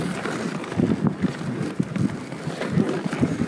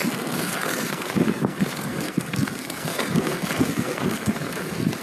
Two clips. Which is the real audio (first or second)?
first